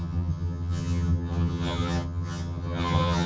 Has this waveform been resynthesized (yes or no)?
yes